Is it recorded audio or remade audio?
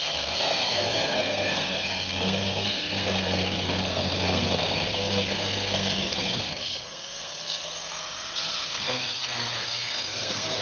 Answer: remade